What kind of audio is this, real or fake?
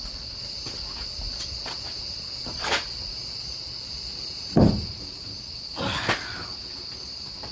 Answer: real